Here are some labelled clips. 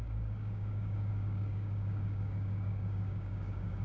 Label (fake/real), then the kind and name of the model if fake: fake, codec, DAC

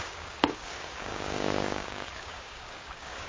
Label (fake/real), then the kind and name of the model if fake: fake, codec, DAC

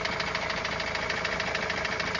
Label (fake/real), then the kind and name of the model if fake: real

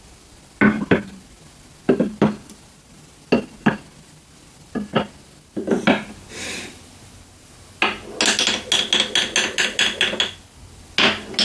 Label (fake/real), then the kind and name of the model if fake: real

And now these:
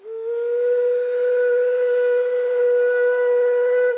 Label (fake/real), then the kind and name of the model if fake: real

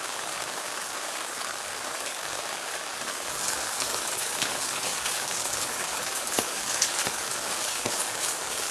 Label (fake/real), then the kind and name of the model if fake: fake, codec, DAC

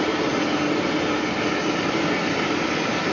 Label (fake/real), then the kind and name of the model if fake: real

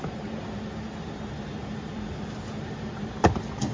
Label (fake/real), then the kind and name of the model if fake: fake, vocoder, BigVGAN v2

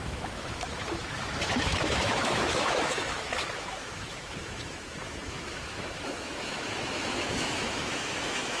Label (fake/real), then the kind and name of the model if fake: fake, autoencoder, DAC-VAE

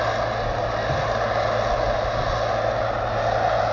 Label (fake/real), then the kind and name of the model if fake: real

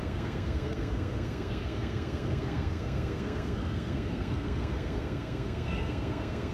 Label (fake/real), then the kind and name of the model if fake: fake, codec, SNAC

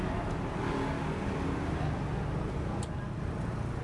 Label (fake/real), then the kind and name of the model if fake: real